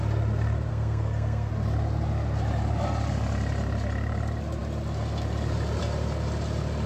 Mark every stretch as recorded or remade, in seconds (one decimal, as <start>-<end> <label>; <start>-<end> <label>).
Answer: 0.0-0.7 recorded; 0.7-1.5 remade; 1.5-6.9 recorded